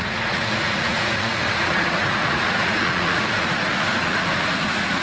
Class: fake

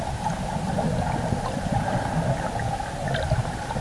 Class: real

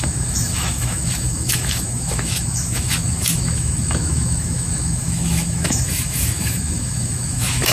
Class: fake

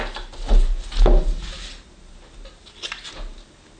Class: real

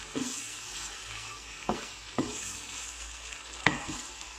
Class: fake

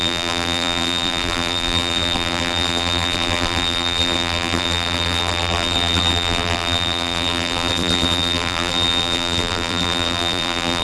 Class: fake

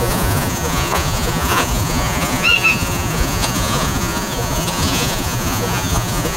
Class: fake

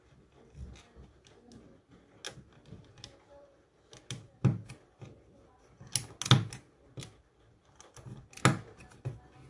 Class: real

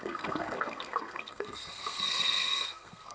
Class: fake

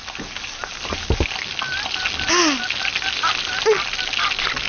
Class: real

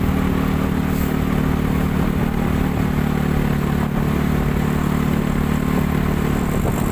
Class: real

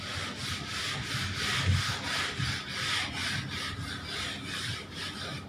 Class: real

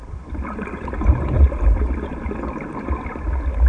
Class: real